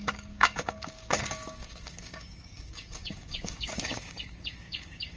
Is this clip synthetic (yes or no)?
yes